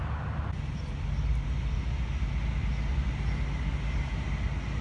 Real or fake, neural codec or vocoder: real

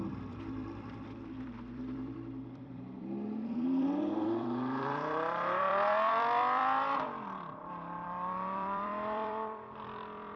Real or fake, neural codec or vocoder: fake, vocoder, BigVGAN v2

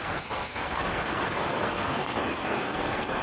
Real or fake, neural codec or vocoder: fake, codec, SNAC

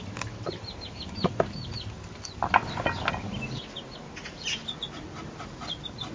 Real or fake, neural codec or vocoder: real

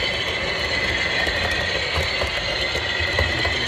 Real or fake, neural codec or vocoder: real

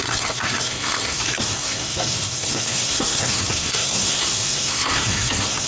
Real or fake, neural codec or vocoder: fake, codec, SNAC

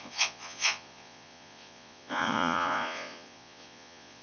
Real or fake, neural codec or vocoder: fake, vocoder, Vocos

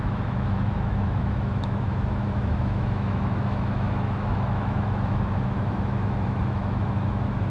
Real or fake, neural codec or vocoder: fake, autoencoder, DAC-VAE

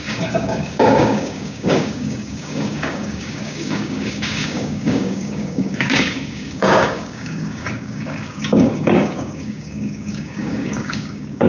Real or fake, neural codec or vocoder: fake, codec, DAC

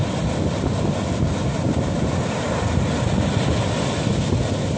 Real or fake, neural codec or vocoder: real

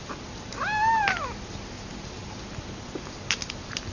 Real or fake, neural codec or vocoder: real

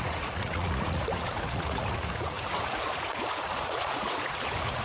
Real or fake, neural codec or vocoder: fake, vocoder, Vocos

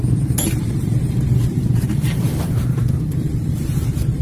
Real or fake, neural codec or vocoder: fake, vocoder, BigVGAN v2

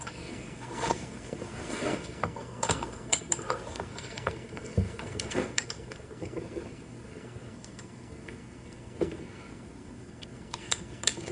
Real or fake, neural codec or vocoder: fake, codec, SNAC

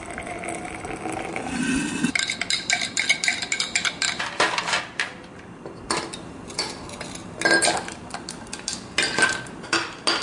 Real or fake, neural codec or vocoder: real